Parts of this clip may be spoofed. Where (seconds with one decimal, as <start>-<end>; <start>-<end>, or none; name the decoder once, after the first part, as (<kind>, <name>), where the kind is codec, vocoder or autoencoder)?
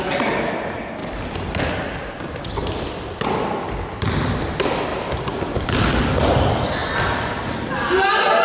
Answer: none